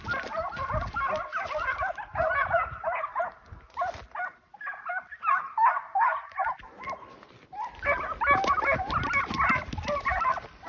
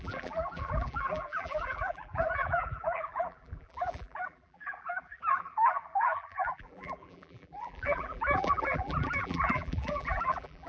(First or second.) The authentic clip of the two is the first